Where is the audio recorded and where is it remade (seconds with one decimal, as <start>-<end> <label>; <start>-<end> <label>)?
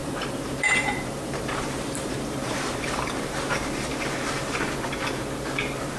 0.0-3.6 remade; 3.6-6.0 recorded